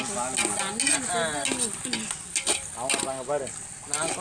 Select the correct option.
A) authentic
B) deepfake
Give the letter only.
A